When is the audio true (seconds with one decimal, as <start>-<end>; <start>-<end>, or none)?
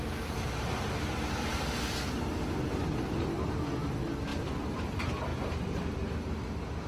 0.0-1.5; 2.1-5.3; 5.9-6.9